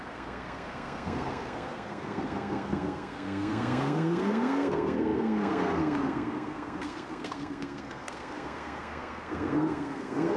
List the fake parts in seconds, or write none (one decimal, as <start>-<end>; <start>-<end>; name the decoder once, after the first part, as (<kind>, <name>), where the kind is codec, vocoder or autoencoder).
0.0-10.4 (codec, SNAC)